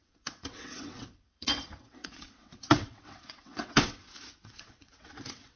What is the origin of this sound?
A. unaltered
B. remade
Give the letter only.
B